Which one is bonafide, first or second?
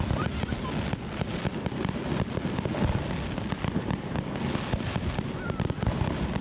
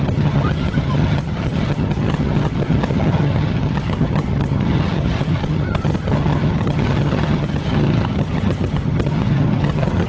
first